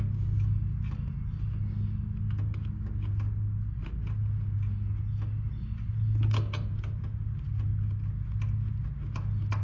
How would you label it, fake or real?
real